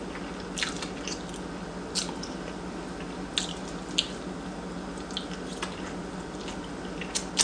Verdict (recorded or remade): recorded